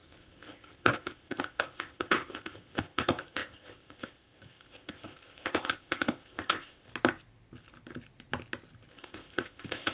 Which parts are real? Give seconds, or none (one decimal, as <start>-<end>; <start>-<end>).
6.9-8.9